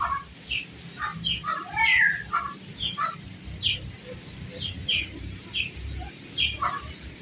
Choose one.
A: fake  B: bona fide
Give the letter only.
B